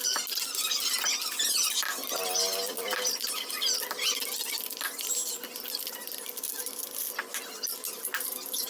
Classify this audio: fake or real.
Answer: real